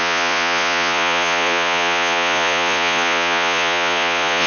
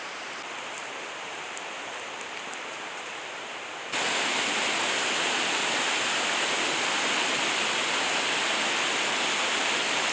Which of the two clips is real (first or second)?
second